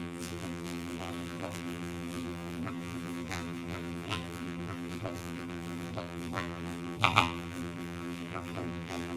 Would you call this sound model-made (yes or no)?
yes